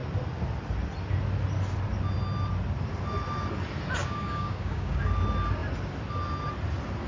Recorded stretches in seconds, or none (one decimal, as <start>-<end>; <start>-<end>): 0.0-4.0; 5.0-7.1